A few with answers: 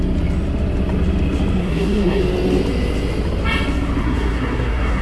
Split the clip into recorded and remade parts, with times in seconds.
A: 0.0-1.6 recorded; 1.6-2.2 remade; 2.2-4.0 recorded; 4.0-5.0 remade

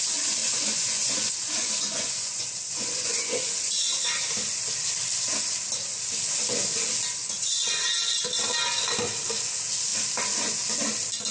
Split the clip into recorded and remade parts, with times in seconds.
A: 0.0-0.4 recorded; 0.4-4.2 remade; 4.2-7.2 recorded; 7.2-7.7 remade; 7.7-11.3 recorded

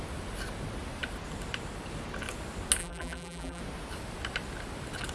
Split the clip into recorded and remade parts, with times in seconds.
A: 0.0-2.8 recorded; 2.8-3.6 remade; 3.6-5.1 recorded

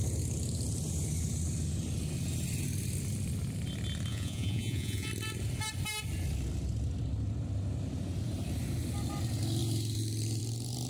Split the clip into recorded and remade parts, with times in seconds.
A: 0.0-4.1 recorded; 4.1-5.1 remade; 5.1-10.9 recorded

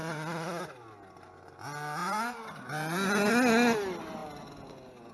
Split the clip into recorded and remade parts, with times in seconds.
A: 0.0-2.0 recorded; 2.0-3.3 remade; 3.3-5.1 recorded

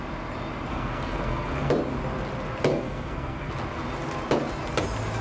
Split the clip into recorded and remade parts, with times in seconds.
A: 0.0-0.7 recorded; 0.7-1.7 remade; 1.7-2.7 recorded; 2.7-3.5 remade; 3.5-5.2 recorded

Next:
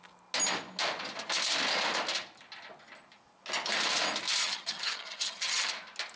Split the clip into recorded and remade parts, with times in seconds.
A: 0.0-4.4 recorded; 4.4-5.7 remade; 5.7-6.2 recorded